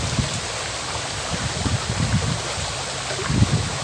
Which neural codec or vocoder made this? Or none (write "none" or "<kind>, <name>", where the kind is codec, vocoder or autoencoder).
none